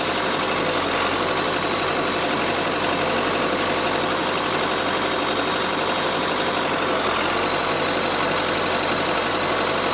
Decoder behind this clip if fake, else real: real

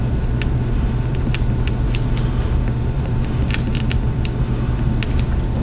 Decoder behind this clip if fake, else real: real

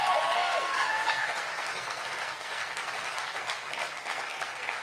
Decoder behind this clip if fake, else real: fake, codec, SNAC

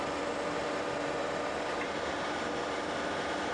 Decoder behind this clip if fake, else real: fake, vocoder, BigVGAN v2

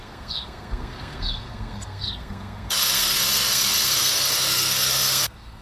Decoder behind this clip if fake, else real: fake, codec, SNAC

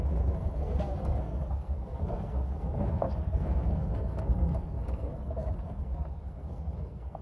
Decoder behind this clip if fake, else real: fake, codec, SNAC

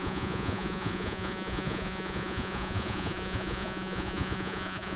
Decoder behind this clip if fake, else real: fake, vocoder, Vocos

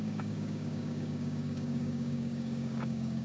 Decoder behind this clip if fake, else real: fake, codec, DAC